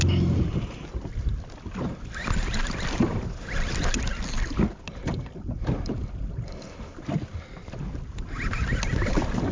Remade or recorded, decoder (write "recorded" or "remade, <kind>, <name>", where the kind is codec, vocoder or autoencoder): recorded